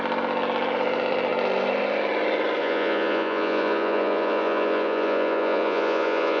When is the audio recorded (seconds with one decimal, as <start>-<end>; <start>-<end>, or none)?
0.0-2.6

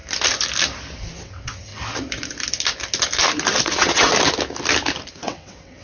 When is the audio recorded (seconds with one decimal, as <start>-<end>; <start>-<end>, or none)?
0.0-1.2; 1.7-3.6; 4.1-5.1

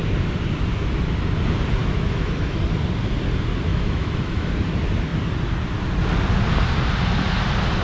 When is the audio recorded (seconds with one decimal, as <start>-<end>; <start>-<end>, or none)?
0.0-1.8; 2.6-3.7; 4.5-7.8

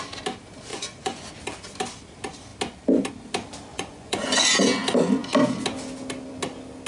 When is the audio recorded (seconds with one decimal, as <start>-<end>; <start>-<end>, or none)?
0.0-0.7; 1.3-3.7; 4.5-6.9